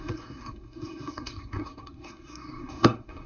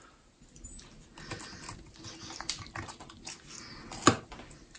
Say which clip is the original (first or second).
second